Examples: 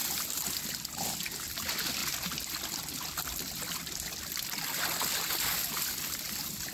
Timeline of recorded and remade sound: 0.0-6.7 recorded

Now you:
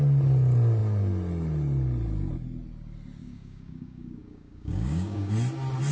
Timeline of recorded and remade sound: 0.0-3.2 recorded; 3.2-5.3 remade; 5.3-5.9 recorded

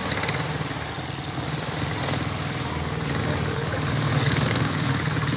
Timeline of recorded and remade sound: 0.0-3.2 recorded; 3.2-5.4 remade